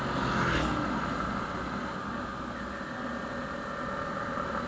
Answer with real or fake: real